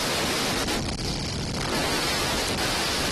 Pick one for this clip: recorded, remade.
recorded